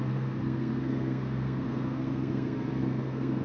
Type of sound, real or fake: fake